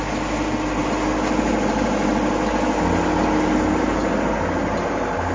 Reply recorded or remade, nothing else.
recorded